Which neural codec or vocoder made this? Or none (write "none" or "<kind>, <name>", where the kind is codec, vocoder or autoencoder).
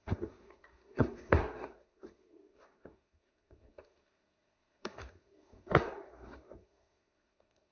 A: codec, SNAC